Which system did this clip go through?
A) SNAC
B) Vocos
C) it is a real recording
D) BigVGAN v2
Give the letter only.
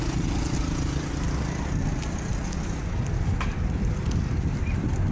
C